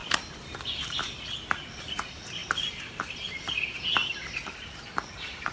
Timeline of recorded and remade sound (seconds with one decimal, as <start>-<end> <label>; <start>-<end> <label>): 0.0-1.0 remade; 1.0-2.4 recorded; 2.4-3.4 remade; 3.4-4.0 recorded; 4.0-5.5 remade